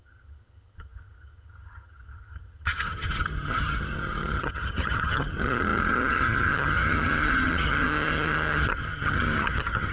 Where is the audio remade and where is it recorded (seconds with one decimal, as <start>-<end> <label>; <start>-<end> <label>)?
0.0-9.9 remade

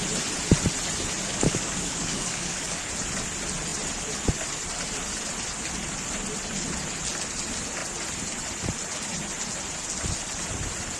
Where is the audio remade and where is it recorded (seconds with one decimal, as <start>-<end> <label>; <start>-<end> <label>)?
0.0-1.3 recorded; 1.3-2.8 remade; 2.8-11.0 recorded

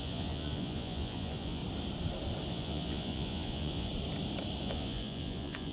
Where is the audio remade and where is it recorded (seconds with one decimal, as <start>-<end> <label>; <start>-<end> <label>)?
0.0-1.6 remade; 1.6-2.5 recorded; 2.5-3.9 remade; 3.9-4.6 recorded; 4.6-5.7 remade

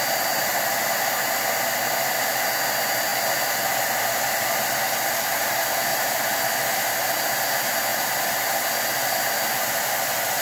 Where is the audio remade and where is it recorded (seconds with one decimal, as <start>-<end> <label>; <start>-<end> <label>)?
0.0-5.9 recorded; 5.9-6.4 remade; 6.4-7.9 recorded; 7.9-8.5 remade; 8.5-10.4 recorded

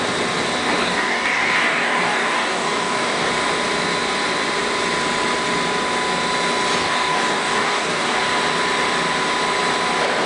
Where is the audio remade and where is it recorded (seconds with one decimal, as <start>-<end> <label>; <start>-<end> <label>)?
0.0-0.8 recorded; 0.8-3.3 remade; 3.3-6.8 recorded; 6.8-8.2 remade; 8.2-10.3 recorded

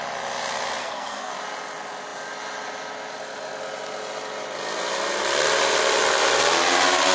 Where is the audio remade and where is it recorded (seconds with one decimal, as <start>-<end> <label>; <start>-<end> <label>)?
0.0-0.8 recorded; 0.8-1.3 remade; 1.3-7.1 recorded

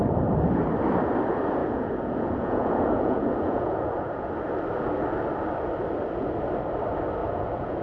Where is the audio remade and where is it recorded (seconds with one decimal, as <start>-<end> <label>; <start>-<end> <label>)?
0.0-1.6 recorded; 1.6-4.3 remade; 4.3-7.2 recorded; 7.2-7.8 remade